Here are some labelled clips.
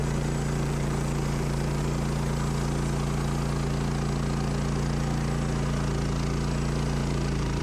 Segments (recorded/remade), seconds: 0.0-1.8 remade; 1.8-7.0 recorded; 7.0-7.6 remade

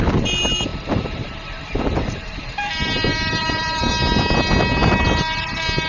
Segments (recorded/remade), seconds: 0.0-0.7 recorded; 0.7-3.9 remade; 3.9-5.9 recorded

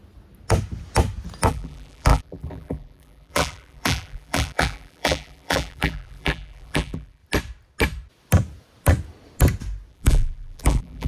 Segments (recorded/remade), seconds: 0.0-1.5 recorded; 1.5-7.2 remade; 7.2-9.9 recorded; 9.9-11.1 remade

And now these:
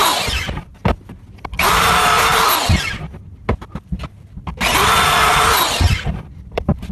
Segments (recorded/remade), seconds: 0.0-0.7 remade; 0.7-1.4 recorded; 1.4-2.0 remade; 2.0-5.9 recorded; 5.9-6.9 remade